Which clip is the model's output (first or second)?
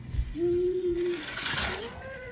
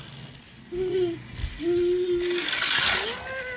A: first